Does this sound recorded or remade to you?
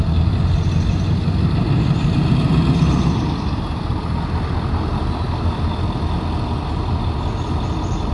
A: recorded